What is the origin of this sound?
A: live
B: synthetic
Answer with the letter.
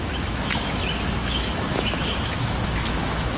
B